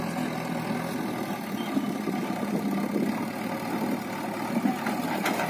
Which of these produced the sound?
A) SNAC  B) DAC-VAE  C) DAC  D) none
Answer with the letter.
D